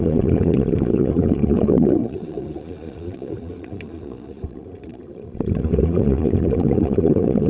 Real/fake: fake